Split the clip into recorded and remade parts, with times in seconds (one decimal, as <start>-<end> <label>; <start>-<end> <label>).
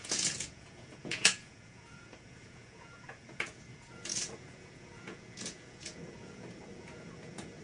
0.0-7.6 remade